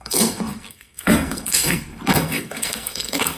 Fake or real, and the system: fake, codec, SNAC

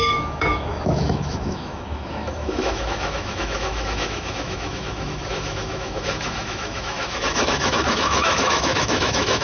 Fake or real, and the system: fake, autoencoder, DAC-VAE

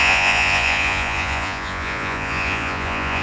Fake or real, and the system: fake, vocoder, Vocos